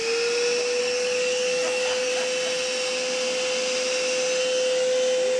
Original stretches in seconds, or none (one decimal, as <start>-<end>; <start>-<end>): 0.0-0.8; 2.1-5.4